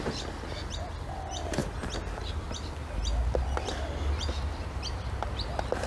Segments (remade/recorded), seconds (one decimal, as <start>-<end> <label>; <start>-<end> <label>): 0.0-5.9 recorded

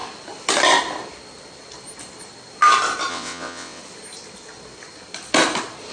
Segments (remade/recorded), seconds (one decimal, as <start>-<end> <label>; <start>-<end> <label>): 0.0-3.1 recorded; 3.1-3.8 remade; 3.8-5.9 recorded

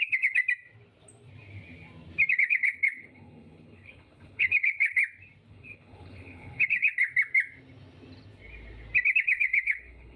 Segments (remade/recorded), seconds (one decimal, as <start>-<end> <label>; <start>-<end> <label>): 0.0-0.4 remade; 0.4-2.3 recorded; 2.3-5.0 remade; 5.0-5.5 recorded; 5.5-7.1 remade; 7.1-9.2 recorded; 9.2-10.2 remade

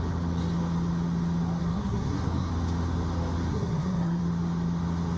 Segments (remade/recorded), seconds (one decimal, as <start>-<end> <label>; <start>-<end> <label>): 0.0-1.6 recorded; 1.6-2.5 remade; 2.5-3.5 recorded; 3.5-4.2 remade; 4.2-5.2 recorded